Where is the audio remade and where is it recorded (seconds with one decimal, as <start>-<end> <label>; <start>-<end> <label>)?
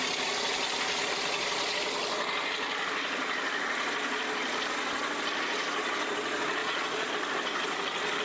0.0-6.6 recorded; 6.6-7.1 remade; 7.1-8.2 recorded